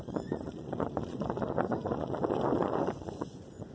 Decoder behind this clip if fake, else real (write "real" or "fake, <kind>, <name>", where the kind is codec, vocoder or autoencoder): fake, vocoder, Vocos